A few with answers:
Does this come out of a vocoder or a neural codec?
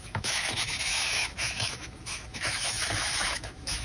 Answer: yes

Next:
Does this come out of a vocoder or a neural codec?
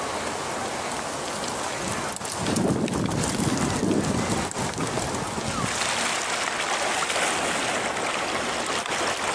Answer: no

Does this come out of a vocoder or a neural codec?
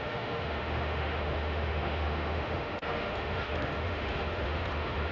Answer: yes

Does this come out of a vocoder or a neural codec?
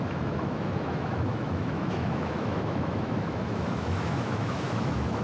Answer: yes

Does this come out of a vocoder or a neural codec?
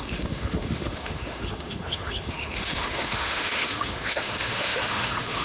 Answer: yes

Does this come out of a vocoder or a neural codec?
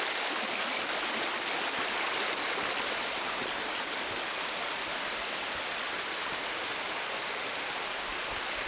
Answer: no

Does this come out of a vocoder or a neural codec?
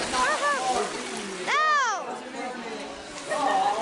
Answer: no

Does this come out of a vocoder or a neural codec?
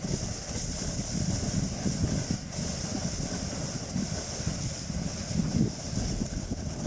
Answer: no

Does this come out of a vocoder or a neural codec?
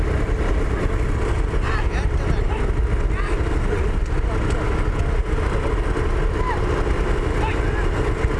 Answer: no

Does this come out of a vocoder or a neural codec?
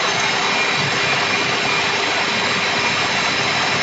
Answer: no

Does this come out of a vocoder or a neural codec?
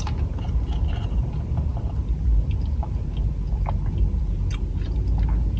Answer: no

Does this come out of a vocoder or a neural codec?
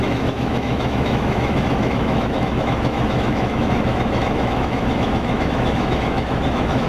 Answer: yes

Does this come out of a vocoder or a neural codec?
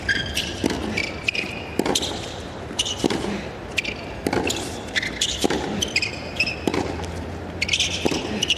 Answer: no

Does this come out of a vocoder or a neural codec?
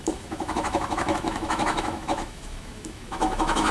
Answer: yes